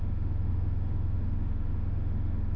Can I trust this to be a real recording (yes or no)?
no